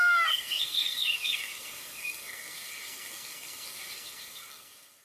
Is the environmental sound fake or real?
fake